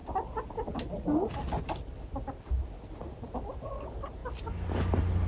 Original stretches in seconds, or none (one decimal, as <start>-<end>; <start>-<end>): 0.0-5.3